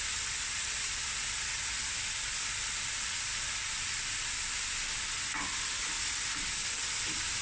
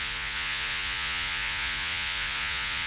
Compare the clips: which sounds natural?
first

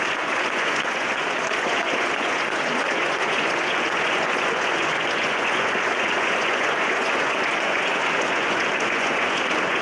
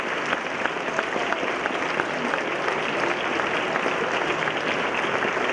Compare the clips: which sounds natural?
second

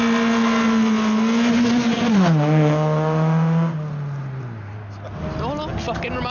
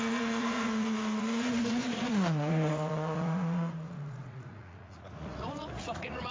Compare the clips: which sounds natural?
first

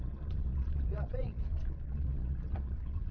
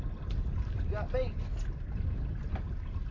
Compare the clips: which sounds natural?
second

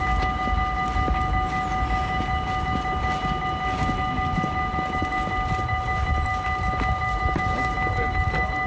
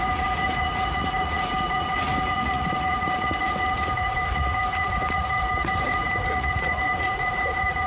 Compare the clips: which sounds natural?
first